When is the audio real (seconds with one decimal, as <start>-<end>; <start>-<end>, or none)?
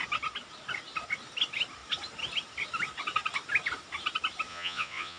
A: 0.0-4.5